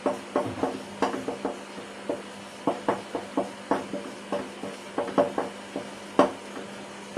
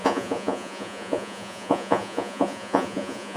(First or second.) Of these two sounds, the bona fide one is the first